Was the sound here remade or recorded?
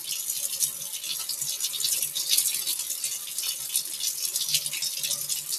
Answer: recorded